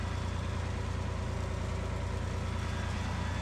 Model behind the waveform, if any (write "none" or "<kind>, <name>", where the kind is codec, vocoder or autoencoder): none